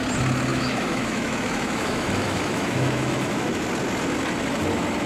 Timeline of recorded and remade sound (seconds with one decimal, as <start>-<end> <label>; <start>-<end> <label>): 0.0-0.5 recorded; 0.5-3.6 remade; 3.6-5.1 recorded